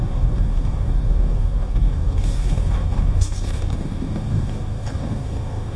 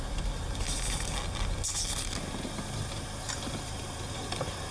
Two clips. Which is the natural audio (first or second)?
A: second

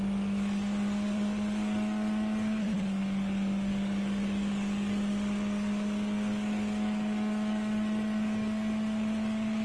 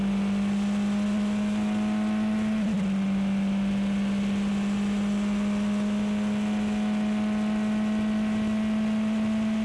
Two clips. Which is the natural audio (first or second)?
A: second